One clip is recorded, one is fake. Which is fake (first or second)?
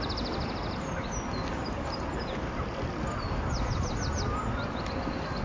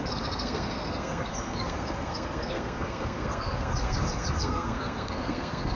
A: second